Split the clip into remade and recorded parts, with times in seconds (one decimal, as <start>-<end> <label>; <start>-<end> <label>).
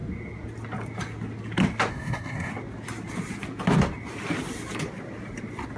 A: 0.0-1.9 recorded; 1.9-2.5 remade; 2.5-5.8 recorded